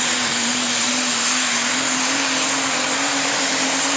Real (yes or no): no